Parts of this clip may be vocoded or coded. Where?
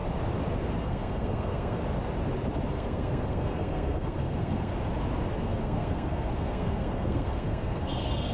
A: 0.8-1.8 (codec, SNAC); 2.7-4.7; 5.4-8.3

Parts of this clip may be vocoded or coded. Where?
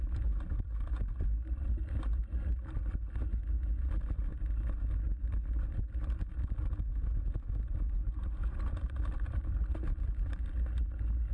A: 8.2-10.3 (vocoder, BigVGAN v2)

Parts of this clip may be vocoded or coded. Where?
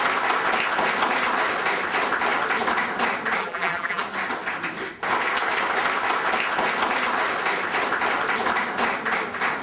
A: 3.4-4.0 (vocoder, BigVGAN v2)